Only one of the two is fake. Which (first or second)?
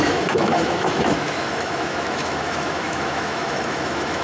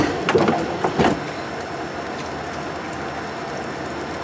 first